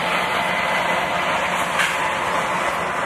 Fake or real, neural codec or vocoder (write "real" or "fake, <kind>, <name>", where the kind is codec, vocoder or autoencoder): real